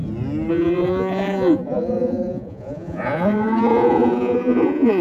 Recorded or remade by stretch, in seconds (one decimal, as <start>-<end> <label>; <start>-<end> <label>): 0.0-0.5 recorded; 0.5-5.0 remade